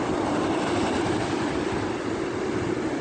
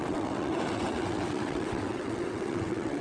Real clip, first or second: first